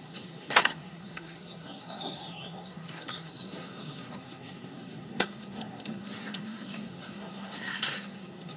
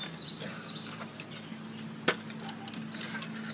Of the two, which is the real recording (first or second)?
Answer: second